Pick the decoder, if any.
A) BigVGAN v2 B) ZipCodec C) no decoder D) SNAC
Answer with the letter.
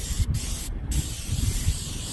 A